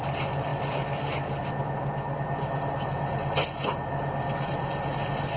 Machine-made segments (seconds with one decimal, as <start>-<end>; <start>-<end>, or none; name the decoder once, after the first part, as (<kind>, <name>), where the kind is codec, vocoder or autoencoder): none